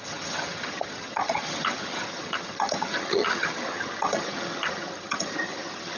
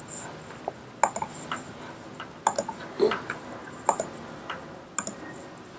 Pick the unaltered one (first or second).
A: second